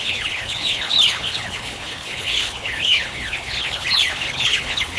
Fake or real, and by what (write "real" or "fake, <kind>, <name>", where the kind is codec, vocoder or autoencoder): fake, codec, HILCodec